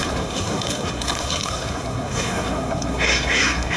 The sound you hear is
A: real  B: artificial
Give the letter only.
B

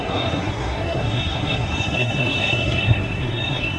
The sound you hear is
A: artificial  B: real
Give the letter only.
A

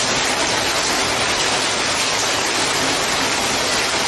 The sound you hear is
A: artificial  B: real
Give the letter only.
B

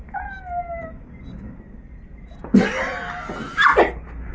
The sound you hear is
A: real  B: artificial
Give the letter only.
A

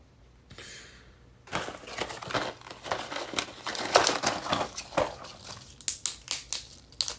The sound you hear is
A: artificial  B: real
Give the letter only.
B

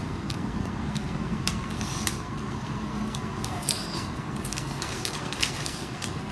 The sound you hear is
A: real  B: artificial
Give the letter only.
B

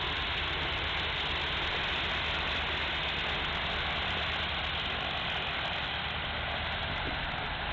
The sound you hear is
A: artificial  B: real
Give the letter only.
B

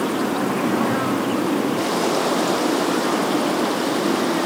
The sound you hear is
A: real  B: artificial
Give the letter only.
B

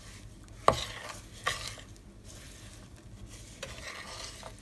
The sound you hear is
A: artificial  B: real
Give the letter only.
B